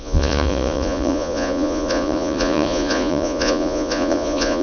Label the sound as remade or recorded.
remade